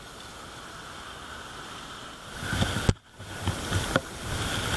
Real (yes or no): yes